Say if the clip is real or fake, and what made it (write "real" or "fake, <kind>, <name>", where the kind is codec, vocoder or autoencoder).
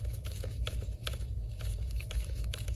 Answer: fake, autoencoder, DAC-VAE